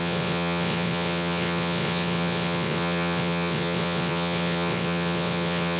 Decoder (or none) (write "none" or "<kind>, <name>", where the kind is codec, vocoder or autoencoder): vocoder, WaveNeXt